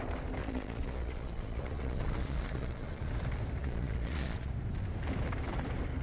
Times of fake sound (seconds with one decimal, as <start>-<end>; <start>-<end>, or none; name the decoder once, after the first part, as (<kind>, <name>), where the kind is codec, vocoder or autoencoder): 0.4-3.1 (vocoder, Vocos); 3.6-4.5